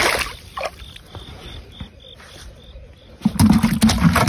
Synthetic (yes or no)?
no